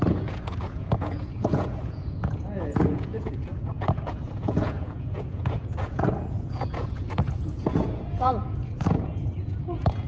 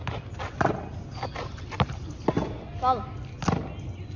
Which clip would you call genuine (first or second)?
second